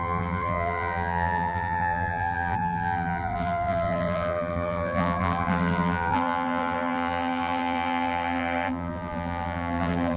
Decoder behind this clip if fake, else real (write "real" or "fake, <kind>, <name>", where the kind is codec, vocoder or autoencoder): fake, vocoder, BigVGAN v2